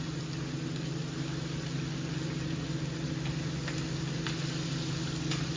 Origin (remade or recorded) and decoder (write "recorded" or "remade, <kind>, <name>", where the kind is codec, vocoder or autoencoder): recorded